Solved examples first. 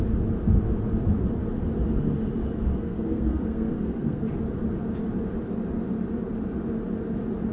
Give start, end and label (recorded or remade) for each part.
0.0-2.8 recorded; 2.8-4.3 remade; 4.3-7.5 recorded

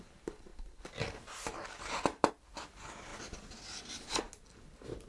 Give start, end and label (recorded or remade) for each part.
0.0-5.1 recorded

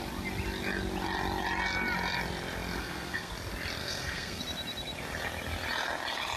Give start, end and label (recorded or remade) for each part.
0.0-2.8 recorded; 2.8-3.3 remade; 3.3-3.8 recorded; 3.8-4.4 remade; 4.4-6.4 recorded

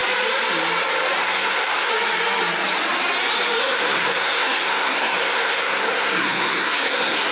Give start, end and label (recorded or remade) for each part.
0.0-1.2 recorded; 1.2-1.9 remade; 1.9-3.6 recorded; 3.6-7.3 remade

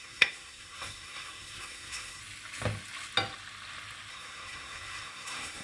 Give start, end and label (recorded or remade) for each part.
0.0-2.2 remade; 2.2-4.1 recorded; 4.1-5.6 remade

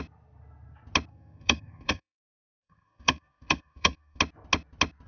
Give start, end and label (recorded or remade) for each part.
0.0-1.1 recorded; 1.1-4.2 remade; 4.2-5.1 recorded

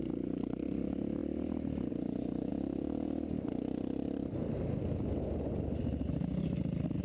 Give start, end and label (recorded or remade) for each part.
0.0-7.0 recorded

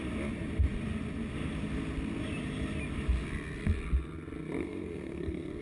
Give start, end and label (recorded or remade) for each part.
0.0-4.6 recorded; 4.6-5.6 remade